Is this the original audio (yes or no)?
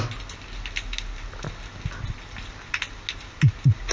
yes